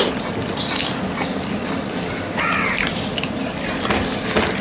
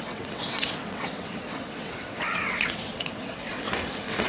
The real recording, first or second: first